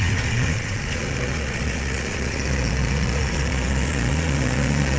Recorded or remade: remade